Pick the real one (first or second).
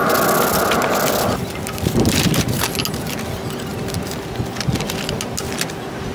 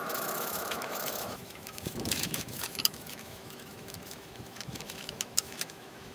first